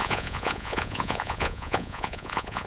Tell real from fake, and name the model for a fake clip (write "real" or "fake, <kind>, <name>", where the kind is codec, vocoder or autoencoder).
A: fake, vocoder, Vocos